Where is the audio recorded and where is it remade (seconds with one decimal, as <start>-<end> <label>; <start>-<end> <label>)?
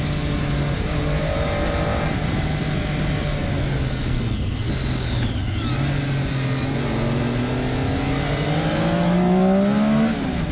0.0-3.9 recorded; 3.9-4.7 remade; 4.7-10.5 recorded